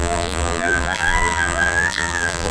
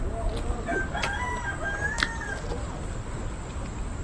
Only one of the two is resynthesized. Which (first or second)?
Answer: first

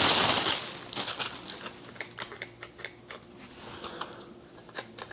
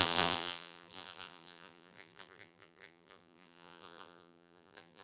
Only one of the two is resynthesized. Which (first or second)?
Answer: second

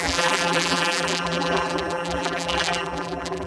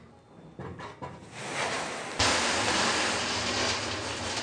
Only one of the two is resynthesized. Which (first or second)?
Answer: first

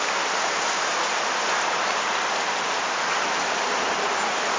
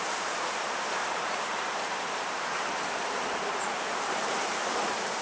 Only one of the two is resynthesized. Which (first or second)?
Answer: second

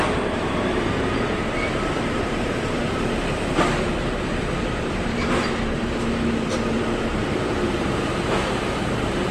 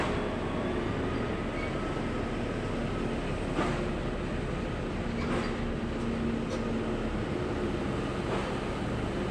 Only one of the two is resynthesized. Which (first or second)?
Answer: first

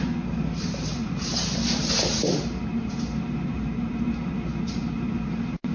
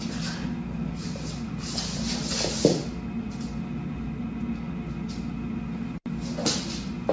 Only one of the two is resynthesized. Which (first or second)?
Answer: first